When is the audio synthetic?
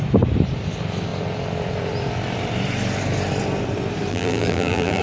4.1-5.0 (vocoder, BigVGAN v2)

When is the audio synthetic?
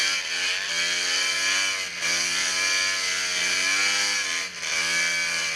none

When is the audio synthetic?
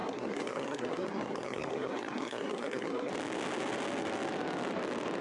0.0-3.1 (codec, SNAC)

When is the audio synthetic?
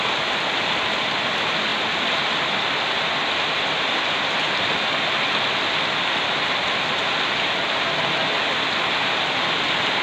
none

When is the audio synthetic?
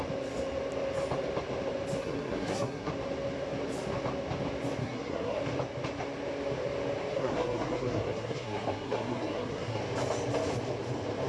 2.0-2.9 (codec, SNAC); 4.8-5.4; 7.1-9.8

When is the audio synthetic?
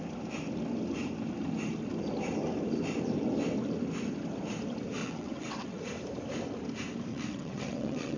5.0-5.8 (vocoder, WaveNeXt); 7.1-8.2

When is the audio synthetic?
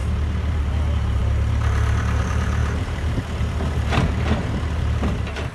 0.5-5.5 (vocoder, BigVGAN v2)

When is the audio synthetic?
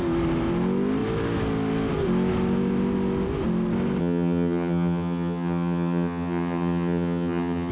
4.0-7.7 (vocoder, HiFi-GAN)